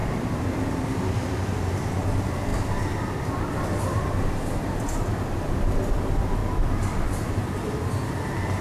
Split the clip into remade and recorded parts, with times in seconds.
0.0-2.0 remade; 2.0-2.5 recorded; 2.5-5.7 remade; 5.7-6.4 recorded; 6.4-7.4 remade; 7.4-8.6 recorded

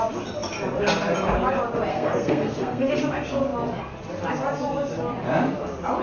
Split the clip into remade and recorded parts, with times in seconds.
0.0-1.9 recorded; 1.9-3.0 remade; 3.0-6.0 recorded

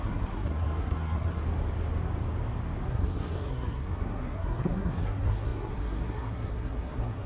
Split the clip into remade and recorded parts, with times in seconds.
0.0-1.4 remade; 1.4-2.9 recorded; 2.9-7.3 remade